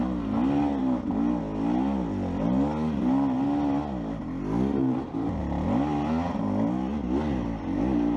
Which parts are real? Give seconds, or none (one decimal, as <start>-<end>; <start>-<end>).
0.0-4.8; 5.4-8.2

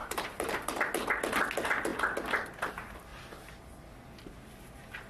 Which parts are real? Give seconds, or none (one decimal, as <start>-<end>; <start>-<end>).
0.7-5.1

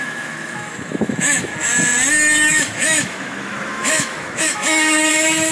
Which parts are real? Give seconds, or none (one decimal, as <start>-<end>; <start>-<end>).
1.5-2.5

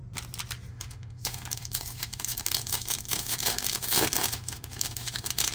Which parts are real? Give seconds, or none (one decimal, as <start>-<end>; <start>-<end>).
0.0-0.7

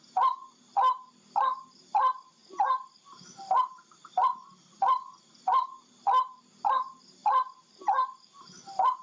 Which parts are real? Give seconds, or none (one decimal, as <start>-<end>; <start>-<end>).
0.0-0.4; 1.8-2.4; 6.5-7.2; 7.8-9.0

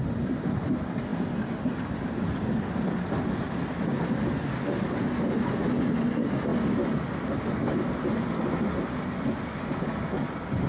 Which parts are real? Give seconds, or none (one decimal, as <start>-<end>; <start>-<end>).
0.0-10.7